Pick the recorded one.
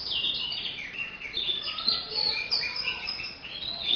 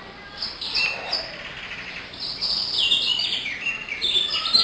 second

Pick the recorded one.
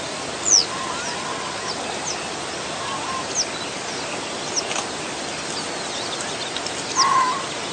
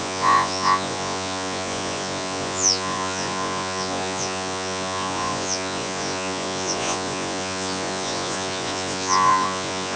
first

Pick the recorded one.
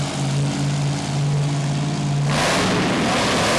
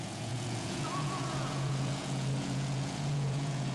first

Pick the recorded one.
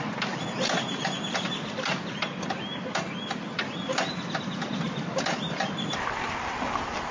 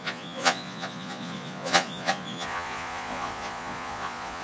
first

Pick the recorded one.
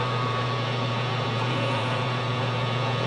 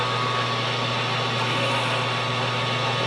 second